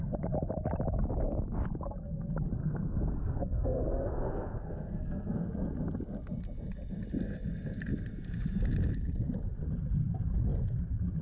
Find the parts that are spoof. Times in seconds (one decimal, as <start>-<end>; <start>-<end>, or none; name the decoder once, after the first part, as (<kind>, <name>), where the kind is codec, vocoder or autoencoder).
2.6-5.5 (codec, SNAC)